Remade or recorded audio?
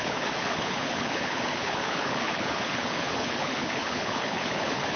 remade